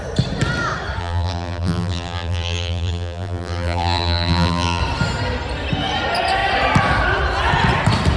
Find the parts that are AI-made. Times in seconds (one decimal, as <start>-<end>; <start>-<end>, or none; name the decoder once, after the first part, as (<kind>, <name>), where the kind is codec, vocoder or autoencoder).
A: 1.0-4.8 (vocoder, BigVGAN v2)